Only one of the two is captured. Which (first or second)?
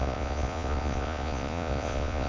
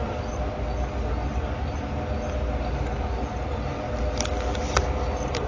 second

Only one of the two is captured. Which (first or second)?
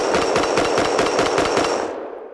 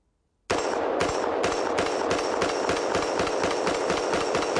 second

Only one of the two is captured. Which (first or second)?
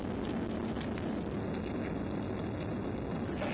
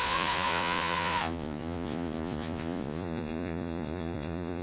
first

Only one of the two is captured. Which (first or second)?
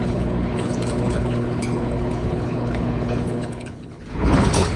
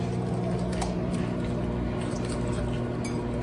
second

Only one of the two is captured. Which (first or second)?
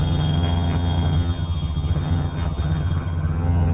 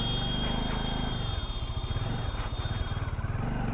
second